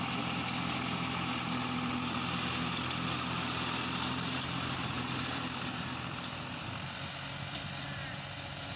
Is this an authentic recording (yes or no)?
yes